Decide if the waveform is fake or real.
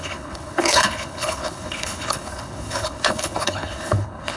fake